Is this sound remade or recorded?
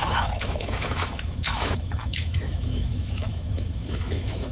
remade